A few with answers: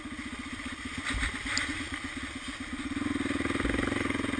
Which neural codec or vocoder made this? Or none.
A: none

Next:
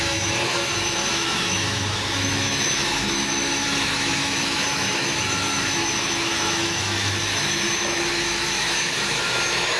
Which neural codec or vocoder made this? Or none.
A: autoencoder, DAC-VAE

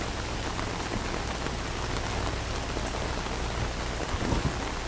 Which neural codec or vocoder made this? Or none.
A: none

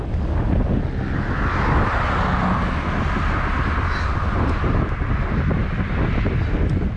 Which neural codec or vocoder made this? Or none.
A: none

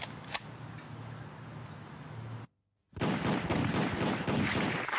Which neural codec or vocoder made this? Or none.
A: none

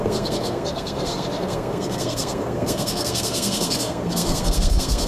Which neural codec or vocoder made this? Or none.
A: codec, SNAC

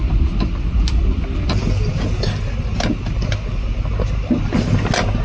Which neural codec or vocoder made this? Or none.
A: none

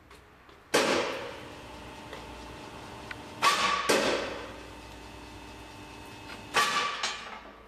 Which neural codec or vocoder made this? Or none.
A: none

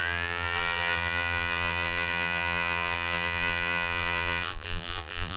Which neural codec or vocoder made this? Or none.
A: vocoder, BigVGAN v2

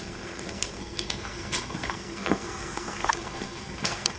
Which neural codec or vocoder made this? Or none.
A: codec, SNAC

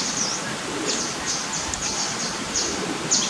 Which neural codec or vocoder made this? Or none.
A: none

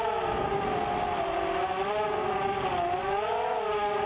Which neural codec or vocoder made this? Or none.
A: none